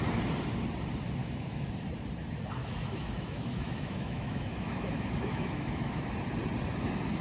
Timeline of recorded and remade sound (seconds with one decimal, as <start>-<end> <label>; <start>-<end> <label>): 0.0-1.2 recorded; 1.2-1.7 remade; 1.7-2.6 recorded; 2.6-6.0 remade; 6.0-7.2 recorded